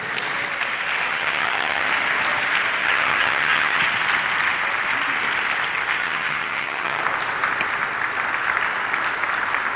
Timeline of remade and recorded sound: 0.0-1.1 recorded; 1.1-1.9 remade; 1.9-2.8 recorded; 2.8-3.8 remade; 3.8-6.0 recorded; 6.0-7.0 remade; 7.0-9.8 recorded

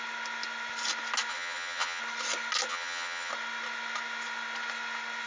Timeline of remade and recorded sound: 0.0-1.3 recorded; 1.3-2.0 remade; 2.0-2.7 recorded; 2.7-3.3 remade; 3.3-5.3 recorded

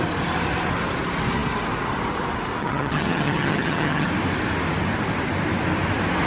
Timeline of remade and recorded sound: 0.0-2.6 recorded; 2.6-4.1 remade; 4.1-6.3 recorded

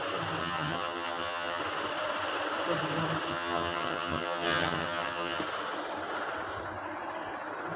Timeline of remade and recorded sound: 0.0-0.4 recorded; 0.4-1.6 remade; 1.6-3.3 recorded; 3.3-5.4 remade; 5.4-7.8 recorded

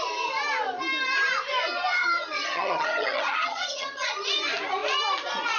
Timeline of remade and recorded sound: 0.0-1.9 recorded; 1.9-4.3 remade; 4.3-5.6 recorded

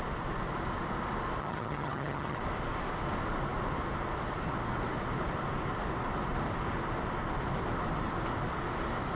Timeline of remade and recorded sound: 0.0-1.4 recorded; 1.4-2.4 remade; 2.4-9.2 recorded

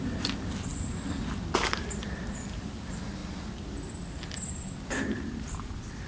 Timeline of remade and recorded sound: 0.0-6.1 recorded